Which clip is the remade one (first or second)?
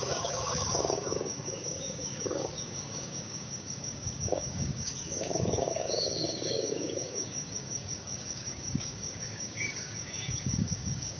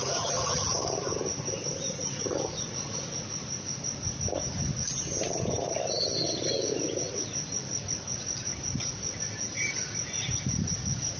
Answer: first